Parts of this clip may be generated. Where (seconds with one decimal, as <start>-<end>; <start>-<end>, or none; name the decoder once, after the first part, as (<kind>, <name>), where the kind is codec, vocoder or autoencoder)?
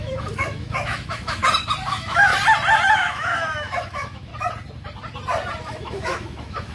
0.0-1.4 (autoencoder, DAC-VAE); 1.9-2.3; 2.9-4.3; 5.6-6.7